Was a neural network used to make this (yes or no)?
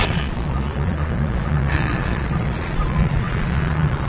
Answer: yes